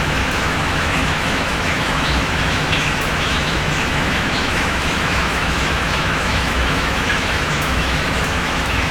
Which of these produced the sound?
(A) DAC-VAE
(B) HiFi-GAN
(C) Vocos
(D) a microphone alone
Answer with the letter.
A